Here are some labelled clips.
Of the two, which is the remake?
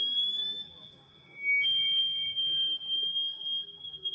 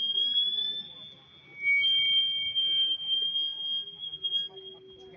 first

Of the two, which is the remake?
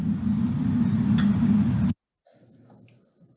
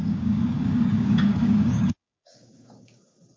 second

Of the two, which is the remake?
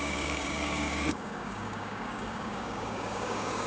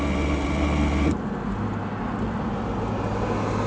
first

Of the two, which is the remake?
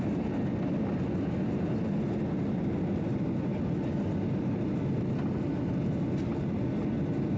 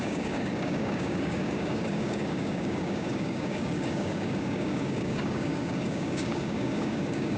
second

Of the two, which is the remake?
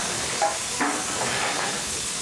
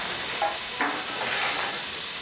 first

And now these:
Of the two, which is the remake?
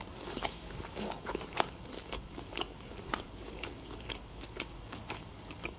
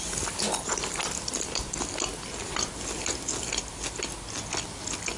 first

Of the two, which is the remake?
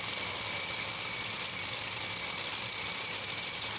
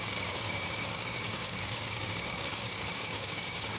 second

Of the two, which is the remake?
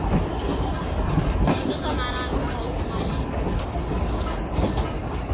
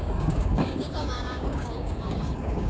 second